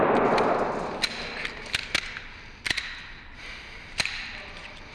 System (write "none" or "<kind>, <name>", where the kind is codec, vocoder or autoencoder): none